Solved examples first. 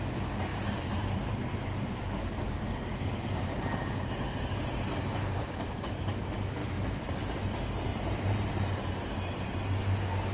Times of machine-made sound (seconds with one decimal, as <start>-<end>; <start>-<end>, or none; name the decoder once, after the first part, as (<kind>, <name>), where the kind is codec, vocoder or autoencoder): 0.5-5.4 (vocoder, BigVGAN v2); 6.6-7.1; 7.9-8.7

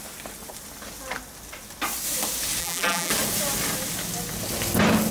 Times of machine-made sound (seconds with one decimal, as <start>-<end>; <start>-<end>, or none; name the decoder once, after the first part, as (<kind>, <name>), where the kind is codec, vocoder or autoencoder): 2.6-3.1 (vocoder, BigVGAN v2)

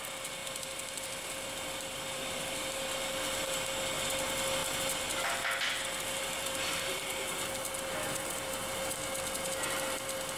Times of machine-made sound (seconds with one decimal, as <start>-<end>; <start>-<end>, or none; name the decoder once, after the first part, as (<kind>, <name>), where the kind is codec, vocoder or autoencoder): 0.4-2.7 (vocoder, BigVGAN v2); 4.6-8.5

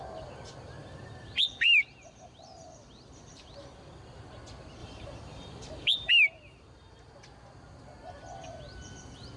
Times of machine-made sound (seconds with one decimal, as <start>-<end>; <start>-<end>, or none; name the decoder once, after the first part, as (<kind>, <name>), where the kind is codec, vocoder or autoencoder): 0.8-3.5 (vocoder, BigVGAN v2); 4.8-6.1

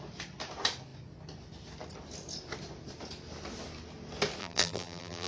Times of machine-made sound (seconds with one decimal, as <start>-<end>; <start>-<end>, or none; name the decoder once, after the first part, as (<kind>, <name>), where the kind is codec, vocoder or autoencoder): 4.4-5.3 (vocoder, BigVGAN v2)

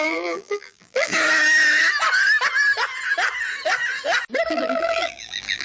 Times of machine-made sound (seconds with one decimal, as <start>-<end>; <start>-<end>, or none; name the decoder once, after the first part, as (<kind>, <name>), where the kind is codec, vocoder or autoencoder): 0.0-1.1 (vocoder, BigVGAN v2); 4.5-5.6

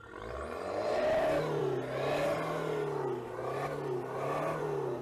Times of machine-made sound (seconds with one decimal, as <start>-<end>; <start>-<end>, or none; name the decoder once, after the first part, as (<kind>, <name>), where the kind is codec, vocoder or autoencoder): none